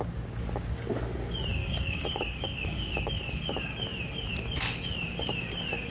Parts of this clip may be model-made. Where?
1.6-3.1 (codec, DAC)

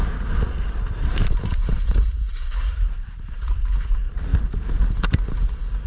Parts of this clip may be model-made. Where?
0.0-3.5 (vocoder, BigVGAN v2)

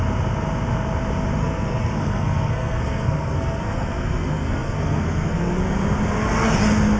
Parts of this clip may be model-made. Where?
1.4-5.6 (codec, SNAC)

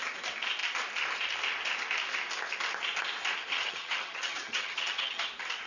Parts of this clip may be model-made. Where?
3.6-5.3 (vocoder, HiFi-GAN)

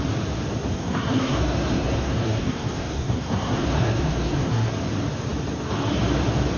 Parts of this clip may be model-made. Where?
0.7-4.7 (codec, SNAC)

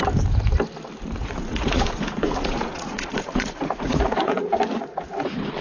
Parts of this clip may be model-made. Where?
1.2-4.6 (vocoder, Vocos)

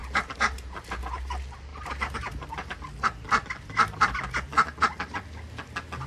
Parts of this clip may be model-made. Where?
0.0-1.2 (vocoder, BigVGAN v2); 1.7-2.7